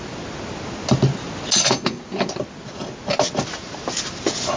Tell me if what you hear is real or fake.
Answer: real